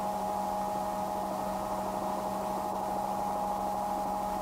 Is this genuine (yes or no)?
yes